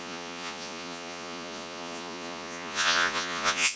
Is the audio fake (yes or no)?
yes